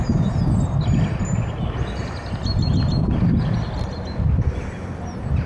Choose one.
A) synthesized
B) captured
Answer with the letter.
B